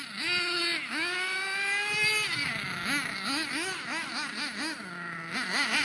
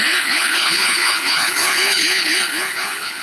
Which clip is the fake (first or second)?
second